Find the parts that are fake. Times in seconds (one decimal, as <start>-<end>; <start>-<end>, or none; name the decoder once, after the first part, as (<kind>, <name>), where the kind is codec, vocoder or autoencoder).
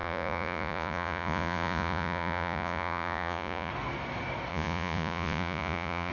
0.0-3.7 (vocoder, Vocos); 4.5-6.1